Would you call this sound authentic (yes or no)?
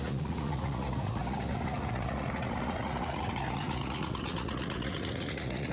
no